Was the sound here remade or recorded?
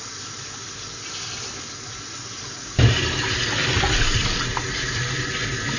recorded